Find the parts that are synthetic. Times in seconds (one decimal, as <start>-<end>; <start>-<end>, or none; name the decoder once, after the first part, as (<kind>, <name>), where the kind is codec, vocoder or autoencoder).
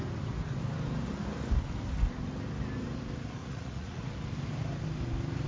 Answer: 3.4-4.0 (vocoder, Vocos)